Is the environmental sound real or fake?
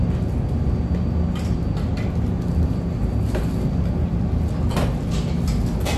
real